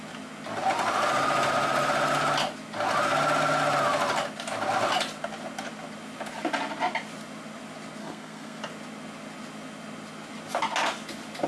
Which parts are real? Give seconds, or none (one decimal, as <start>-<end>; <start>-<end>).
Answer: 0.0-8.0; 8.6-11.5